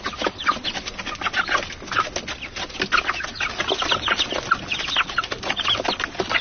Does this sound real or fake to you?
real